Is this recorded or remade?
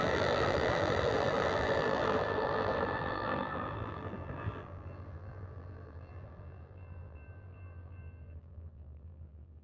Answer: remade